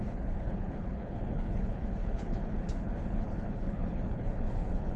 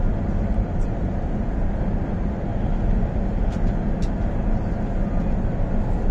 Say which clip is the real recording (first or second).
second